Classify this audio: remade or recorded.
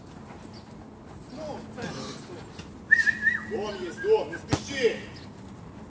recorded